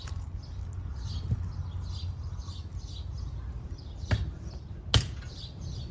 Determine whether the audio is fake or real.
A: real